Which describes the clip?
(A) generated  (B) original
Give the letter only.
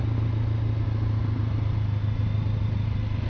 B